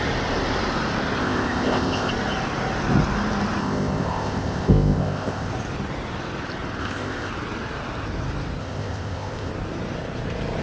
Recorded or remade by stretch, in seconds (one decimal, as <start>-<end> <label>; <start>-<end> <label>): 0.0-1.2 recorded; 1.2-2.1 remade; 2.1-3.6 recorded; 3.6-5.5 remade; 5.5-6.8 recorded; 6.8-7.3 remade; 7.3-8.6 recorded; 8.6-9.5 remade; 9.5-10.6 recorded